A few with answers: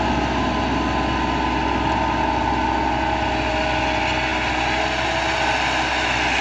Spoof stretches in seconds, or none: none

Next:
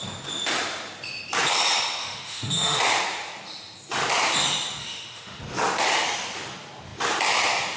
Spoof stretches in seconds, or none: 2.0-2.8; 4.8-5.4

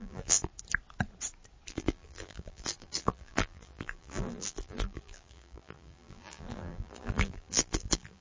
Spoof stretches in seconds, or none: 0.0-0.5; 1.7-8.2